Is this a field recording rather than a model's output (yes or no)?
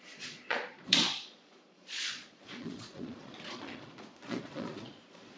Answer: no